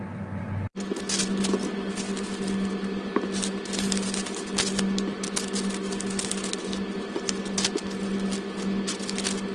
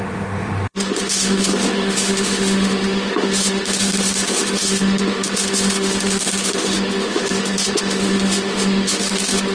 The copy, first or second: second